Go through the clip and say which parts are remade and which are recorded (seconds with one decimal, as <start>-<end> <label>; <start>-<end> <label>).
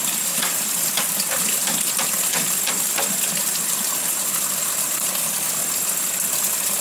0.0-1.6 remade; 1.6-4.1 recorded; 4.1-5.6 remade; 5.6-6.8 recorded